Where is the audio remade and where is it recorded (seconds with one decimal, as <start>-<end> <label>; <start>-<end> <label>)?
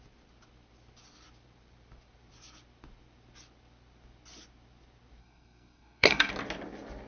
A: 0.0-5.2 recorded; 5.2-6.3 remade; 6.3-7.1 recorded